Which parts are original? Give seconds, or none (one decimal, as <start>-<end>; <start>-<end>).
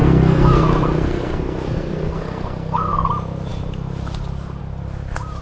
3.1-5.4